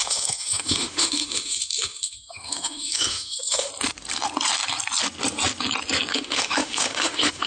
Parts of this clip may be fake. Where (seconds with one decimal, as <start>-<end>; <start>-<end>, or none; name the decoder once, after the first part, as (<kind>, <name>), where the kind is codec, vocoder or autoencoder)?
0.0-3.7 (autoencoder, DAC-VAE); 6.1-7.5